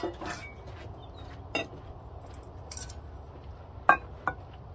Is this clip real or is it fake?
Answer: real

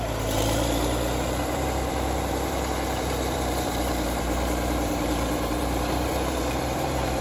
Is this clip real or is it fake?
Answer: fake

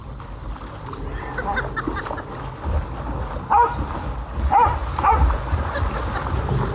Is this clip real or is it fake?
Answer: real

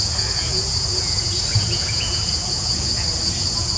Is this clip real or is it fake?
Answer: fake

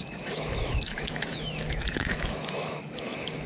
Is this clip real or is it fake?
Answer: fake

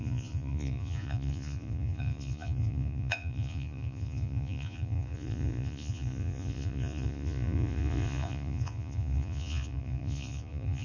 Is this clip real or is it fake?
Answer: fake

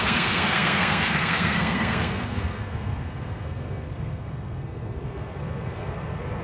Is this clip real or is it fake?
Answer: fake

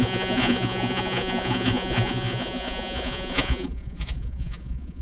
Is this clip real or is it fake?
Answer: fake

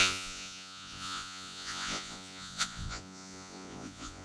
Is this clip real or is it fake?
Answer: fake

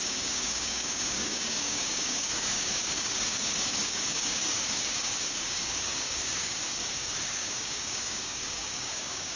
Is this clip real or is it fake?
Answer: fake